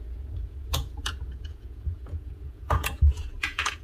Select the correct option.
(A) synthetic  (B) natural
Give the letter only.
A